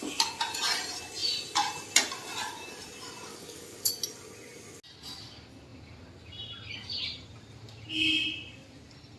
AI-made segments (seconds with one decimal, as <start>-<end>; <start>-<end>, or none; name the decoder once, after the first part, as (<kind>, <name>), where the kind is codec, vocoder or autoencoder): 3.3-3.9 (codec, DAC)